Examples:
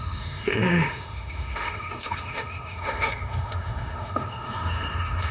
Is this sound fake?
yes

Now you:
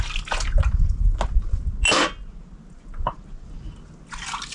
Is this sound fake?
no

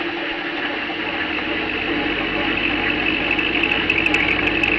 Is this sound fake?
no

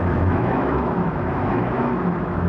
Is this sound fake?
yes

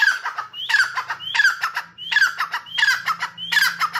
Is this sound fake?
no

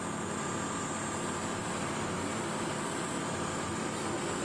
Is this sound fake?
no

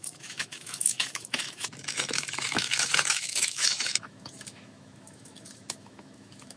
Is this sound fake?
yes